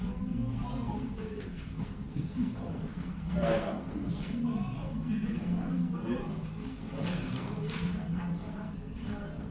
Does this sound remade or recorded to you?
remade